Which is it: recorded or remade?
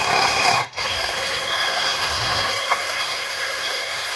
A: remade